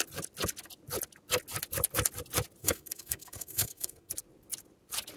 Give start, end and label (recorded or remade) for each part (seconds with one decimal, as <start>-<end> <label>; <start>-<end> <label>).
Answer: 0.0-2.6 recorded; 2.6-4.1 remade; 4.1-5.2 recorded

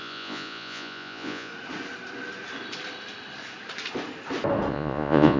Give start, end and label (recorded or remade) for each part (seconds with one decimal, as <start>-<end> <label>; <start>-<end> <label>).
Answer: 0.0-1.5 remade; 1.5-4.7 recorded; 4.7-5.4 remade

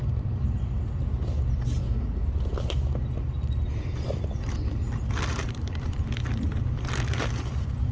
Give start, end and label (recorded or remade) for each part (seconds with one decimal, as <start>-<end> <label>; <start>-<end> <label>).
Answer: 0.0-5.3 recorded; 5.3-6.0 remade; 6.0-7.9 recorded

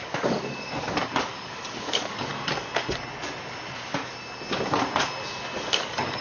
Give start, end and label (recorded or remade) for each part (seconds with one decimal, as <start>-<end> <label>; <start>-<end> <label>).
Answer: 0.0-2.3 remade; 2.3-5.8 recorded; 5.8-6.2 remade

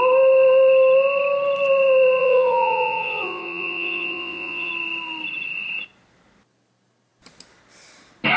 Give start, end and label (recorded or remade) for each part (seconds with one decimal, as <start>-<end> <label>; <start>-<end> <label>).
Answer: 0.0-2.2 recorded; 2.2-4.7 remade; 4.7-8.4 recorded

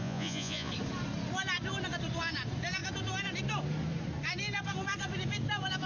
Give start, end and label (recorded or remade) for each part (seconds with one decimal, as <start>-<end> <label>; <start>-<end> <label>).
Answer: 0.0-0.7 remade; 0.7-5.9 recorded

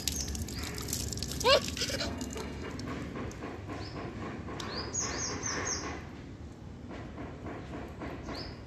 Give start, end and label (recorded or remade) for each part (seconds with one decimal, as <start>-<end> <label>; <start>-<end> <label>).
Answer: 0.0-1.9 recorded; 1.9-2.7 remade; 2.7-8.7 recorded

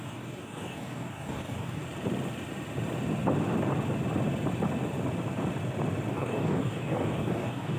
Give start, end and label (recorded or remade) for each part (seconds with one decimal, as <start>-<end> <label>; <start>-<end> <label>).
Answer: 0.0-1.8 remade; 1.8-6.1 recorded; 6.1-7.8 remade